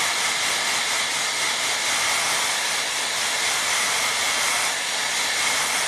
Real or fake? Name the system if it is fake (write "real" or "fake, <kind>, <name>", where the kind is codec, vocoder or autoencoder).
real